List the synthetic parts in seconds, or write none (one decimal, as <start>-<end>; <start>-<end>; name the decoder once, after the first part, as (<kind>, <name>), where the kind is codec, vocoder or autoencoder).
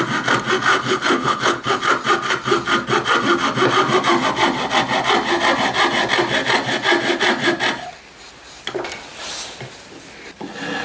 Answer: 0.7-1.8 (codec, HILCodec)